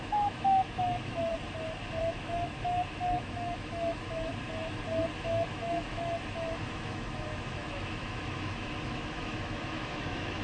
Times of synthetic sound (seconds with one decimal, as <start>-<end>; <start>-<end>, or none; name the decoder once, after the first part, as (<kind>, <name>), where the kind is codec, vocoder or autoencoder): 0.0-1.3 (autoencoder, DAC-VAE); 2.0-4.3; 5.2-10.4